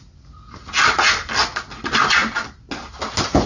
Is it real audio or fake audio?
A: real